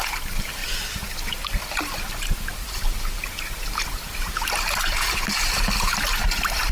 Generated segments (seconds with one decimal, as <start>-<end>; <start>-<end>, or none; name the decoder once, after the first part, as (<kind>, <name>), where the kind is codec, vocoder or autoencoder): none